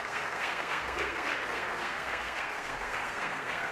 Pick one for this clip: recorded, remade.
remade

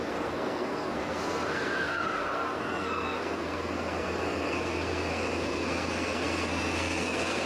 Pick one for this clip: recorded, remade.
remade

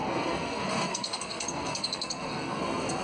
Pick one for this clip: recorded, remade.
remade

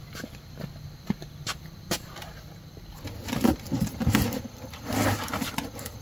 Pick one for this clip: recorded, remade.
recorded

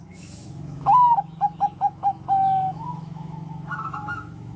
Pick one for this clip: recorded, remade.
remade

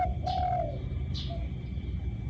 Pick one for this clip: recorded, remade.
recorded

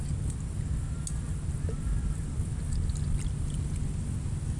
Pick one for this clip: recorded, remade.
recorded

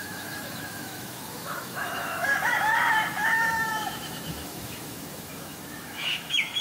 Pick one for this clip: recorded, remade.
remade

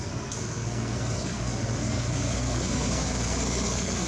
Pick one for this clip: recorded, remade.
remade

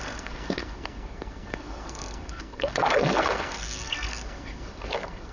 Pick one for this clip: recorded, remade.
remade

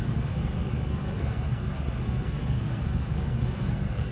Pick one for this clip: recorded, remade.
remade